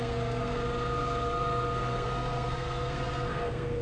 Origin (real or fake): fake